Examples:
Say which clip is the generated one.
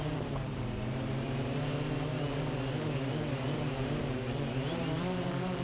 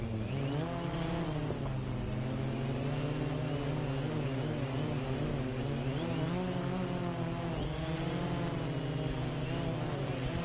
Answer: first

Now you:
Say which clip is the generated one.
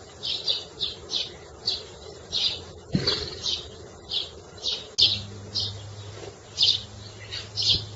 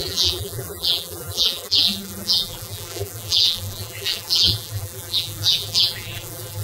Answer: second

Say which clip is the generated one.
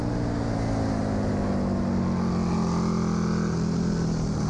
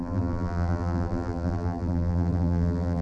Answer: second